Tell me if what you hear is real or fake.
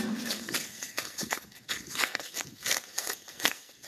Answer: fake